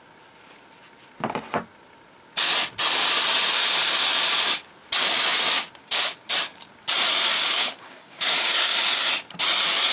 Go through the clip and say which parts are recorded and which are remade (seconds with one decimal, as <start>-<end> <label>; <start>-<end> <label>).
0.0-5.8 recorded; 5.8-6.3 remade; 6.3-7.3 recorded; 7.3-9.1 remade; 9.1-9.9 recorded